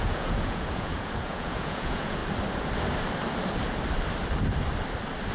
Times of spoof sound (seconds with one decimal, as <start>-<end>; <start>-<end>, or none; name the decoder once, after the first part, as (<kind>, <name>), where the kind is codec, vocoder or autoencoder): 0.0-2.2 (vocoder, Vocos)